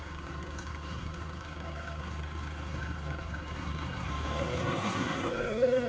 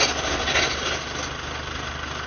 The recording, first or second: second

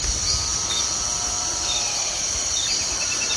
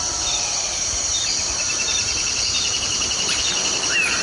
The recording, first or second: first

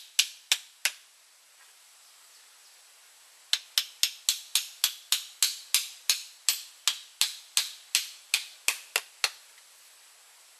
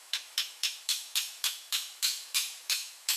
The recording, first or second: first